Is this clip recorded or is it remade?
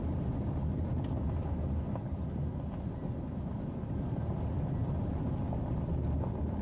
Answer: recorded